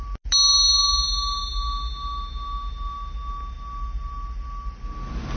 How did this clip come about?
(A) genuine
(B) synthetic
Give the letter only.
A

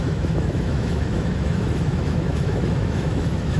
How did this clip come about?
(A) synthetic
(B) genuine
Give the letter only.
A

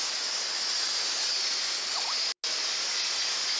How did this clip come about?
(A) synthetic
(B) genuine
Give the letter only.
B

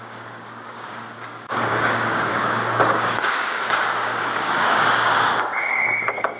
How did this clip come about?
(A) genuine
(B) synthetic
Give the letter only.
B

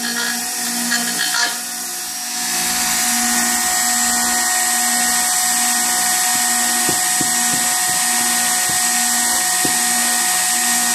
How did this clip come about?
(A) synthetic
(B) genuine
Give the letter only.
B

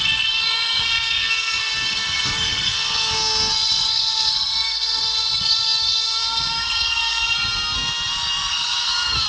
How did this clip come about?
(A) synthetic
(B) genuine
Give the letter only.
A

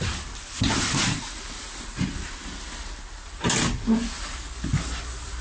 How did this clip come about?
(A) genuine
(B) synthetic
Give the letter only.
A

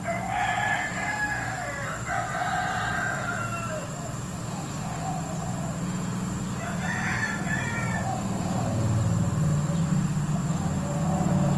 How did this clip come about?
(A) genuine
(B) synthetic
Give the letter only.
A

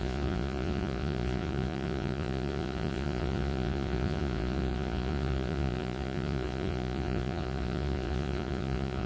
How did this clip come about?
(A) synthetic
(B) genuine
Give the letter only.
A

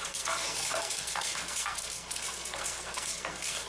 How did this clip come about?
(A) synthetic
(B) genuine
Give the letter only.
A